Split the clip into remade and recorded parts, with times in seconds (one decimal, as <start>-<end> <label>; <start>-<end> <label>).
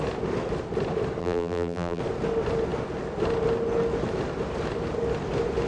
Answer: 0.0-1.2 recorded; 1.2-2.0 remade; 2.0-5.7 recorded